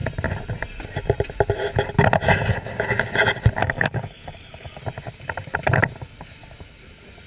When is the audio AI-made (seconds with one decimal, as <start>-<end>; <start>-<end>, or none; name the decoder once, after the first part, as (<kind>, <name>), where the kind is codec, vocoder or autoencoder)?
3.6-4.8 (codec, DAC)